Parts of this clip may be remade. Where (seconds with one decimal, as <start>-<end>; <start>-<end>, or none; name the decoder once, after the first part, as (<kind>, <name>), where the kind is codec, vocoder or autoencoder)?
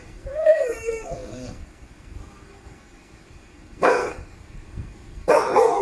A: 0.0-5.8 (codec, SNAC)